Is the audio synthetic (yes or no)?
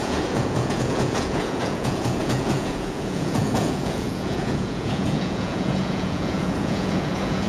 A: yes